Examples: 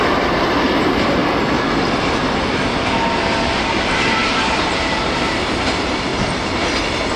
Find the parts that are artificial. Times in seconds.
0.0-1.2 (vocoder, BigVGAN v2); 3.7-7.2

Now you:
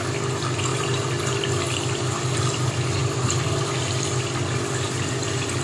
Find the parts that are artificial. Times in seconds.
0.7-2.0 (vocoder, BigVGAN v2); 3.0-3.7

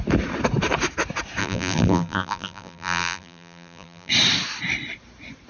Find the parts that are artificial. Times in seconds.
1.4-4.1 (vocoder, BigVGAN v2)

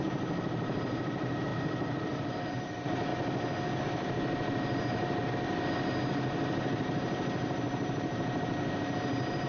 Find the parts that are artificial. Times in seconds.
0.0-3.1 (vocoder, BigVGAN v2); 3.8-5.2; 6.1-9.5

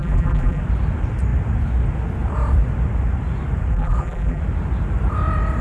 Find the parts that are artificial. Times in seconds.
0.0-0.6 (vocoder, BigVGAN v2); 3.7-4.4

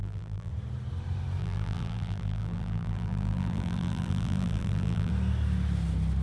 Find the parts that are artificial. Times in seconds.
0.0-0.5 (vocoder, BigVGAN v2); 1.4-5.1